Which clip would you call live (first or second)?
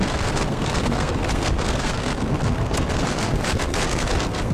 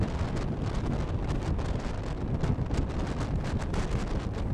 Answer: second